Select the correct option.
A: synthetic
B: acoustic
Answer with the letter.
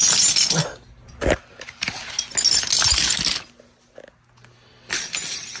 B